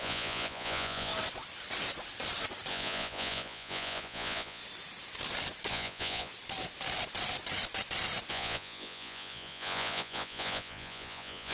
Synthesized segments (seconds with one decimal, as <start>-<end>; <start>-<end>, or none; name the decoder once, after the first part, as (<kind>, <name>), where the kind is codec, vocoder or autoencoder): 0.0-1.1 (vocoder, Vocos); 2.7-4.6; 5.7-6.3; 8.3-11.5